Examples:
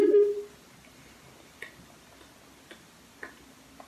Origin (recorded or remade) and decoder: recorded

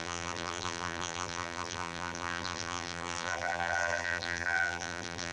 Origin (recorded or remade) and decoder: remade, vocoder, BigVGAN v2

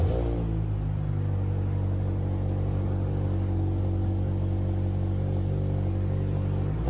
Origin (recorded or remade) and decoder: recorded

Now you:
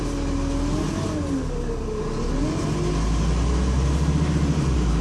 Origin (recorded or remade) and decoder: recorded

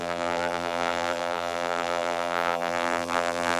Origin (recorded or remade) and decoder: remade, vocoder, BigVGAN v2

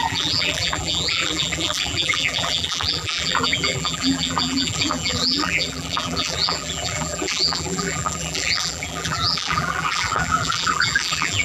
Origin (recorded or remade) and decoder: remade, vocoder, BigVGAN v2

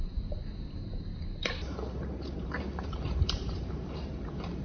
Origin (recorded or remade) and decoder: remade, vocoder, BigVGAN v2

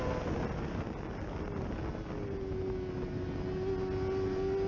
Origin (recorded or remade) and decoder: recorded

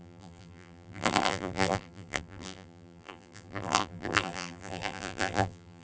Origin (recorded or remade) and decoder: remade, vocoder, BigVGAN v2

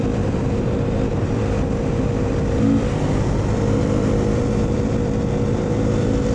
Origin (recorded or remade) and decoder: remade, vocoder, BigVGAN v2